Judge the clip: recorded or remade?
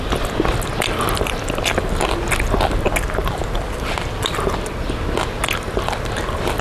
recorded